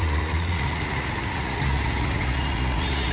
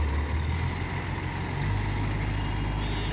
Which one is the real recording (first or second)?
second